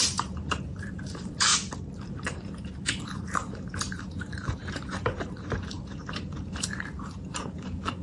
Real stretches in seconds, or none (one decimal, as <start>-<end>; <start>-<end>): 1.5-2.1